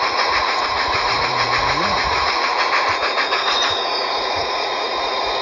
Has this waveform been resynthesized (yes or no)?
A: yes